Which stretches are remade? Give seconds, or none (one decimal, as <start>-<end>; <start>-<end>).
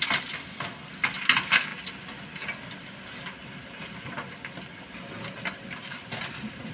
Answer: 0.4-0.9